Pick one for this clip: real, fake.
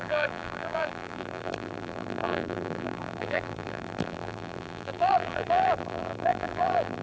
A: fake